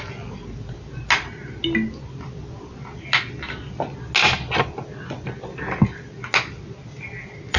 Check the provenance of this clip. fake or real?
real